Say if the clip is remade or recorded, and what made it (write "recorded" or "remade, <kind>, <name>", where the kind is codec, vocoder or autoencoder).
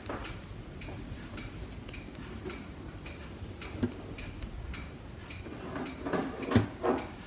recorded